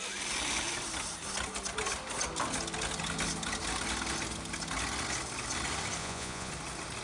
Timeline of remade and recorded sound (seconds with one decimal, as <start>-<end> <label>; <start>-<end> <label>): 0.0-6.0 recorded; 6.0-6.5 remade; 6.5-7.0 recorded